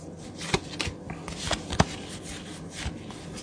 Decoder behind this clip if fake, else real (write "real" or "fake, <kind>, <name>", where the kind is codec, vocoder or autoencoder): real